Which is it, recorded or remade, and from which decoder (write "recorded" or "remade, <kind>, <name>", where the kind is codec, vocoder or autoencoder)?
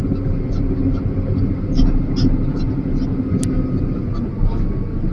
recorded